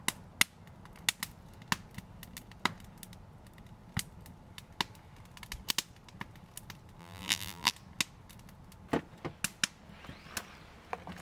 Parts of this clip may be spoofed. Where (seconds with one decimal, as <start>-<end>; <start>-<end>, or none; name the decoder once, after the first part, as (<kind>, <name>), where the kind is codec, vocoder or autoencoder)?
7.0-7.7 (vocoder, BigVGAN v2)